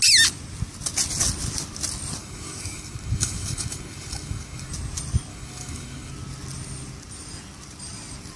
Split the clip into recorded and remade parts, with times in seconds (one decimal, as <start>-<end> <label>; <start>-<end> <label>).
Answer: 0.0-2.2 recorded; 2.2-4.7 remade; 4.7-5.3 recorded; 5.3-6.1 remade; 6.1-8.4 recorded